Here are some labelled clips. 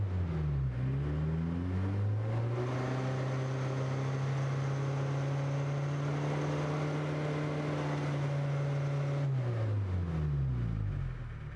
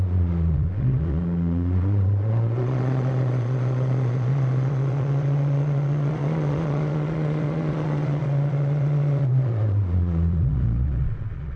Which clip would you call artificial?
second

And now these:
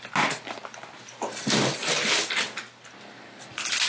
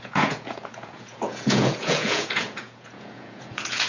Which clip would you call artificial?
second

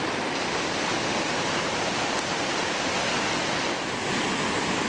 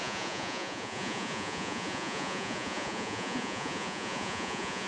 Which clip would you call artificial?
second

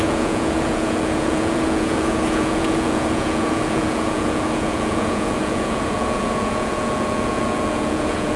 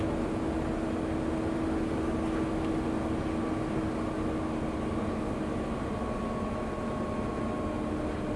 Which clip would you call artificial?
first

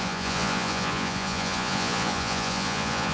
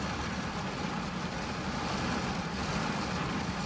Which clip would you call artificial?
first